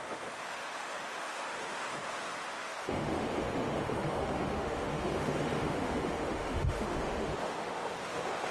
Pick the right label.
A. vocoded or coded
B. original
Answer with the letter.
A